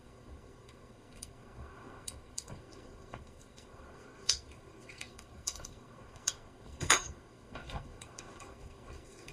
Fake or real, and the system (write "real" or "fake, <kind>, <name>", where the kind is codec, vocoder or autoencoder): fake, codec, SNAC